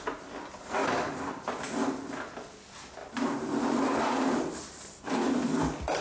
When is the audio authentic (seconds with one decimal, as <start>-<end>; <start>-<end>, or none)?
0.0-6.0